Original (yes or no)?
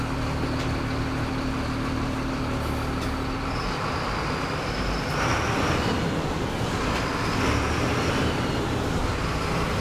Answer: yes